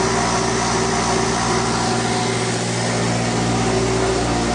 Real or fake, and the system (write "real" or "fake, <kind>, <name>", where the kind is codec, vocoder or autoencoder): real